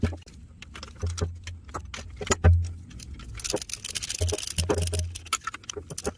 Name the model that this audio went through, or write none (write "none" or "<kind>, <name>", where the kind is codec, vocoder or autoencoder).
none